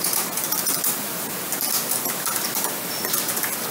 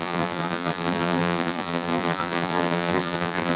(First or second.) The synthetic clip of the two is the second